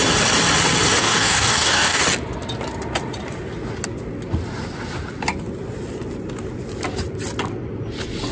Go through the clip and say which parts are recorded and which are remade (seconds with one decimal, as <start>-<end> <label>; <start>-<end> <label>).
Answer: 0.0-1.0 recorded; 1.0-2.0 remade; 2.0-8.3 recorded

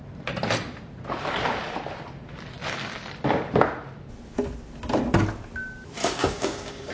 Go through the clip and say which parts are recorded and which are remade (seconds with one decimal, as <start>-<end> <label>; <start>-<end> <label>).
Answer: 0.0-6.0 recorded; 6.0-6.9 remade

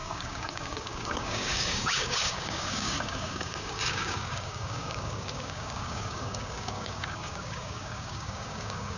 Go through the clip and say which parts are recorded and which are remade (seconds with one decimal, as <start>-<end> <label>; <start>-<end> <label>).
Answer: 0.0-9.0 remade

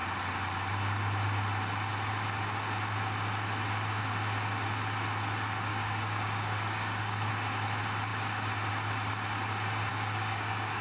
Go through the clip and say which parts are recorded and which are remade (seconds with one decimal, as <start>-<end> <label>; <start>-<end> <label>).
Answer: 0.0-5.7 recorded; 5.7-7.3 remade; 7.3-9.9 recorded; 9.9-10.8 remade

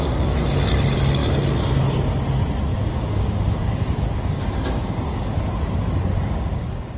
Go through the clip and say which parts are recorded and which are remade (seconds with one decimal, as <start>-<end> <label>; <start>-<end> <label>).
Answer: 0.0-2.7 recorded; 2.7-5.5 remade; 5.5-6.1 recorded; 6.1-7.0 remade

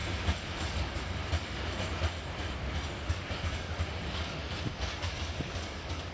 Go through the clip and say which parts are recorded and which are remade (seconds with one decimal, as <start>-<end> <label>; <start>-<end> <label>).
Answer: 0.0-0.6 recorded; 0.6-1.2 remade; 1.2-3.1 recorded; 3.1-4.4 remade; 4.4-5.0 recorded; 5.0-6.1 remade

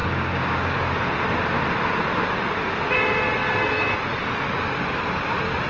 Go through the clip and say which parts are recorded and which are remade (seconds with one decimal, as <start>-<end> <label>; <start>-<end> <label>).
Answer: 0.0-0.8 remade; 0.8-5.7 recorded

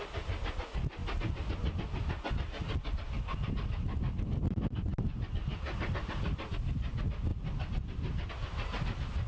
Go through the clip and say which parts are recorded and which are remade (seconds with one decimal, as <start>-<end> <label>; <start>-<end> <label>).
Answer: 0.0-9.3 recorded